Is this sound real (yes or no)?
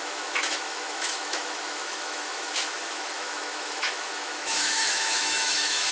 no